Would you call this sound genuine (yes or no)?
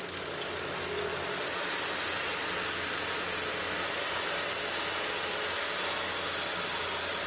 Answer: yes